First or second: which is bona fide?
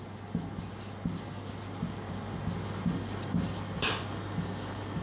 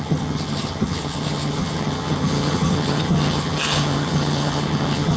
first